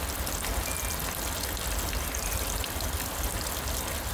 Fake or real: real